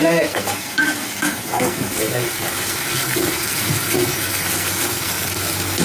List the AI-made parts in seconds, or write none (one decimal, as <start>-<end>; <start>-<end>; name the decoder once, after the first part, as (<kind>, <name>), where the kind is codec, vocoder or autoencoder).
0.0-5.8 (codec, SNAC)